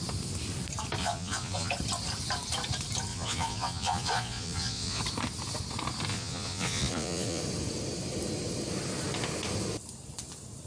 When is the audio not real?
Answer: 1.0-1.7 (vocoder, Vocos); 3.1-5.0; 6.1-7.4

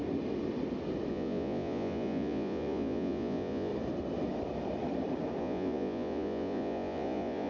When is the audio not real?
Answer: 1.1-3.7 (vocoder, Vocos); 5.4-7.5